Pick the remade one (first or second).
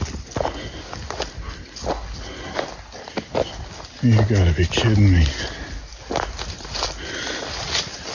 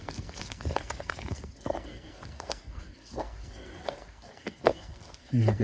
second